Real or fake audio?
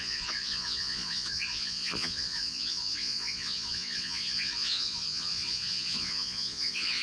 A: fake